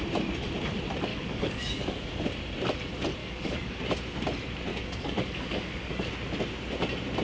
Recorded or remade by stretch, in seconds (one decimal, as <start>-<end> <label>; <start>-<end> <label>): 0.0-1.1 recorded; 1.1-2.1 remade; 2.1-3.2 recorded; 3.2-3.8 remade; 3.8-4.7 recorded; 4.7-6.1 remade; 6.1-7.2 recorded